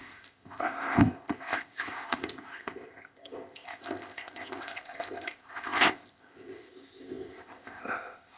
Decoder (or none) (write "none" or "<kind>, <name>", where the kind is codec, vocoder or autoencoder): codec, ZipCodec